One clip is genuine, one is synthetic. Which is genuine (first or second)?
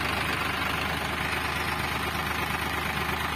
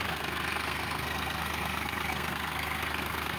first